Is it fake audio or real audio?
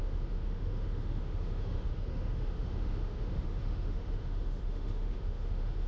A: fake